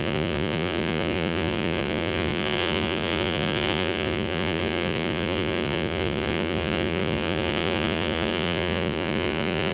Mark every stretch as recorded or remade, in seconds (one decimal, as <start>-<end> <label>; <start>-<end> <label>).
0.0-9.7 remade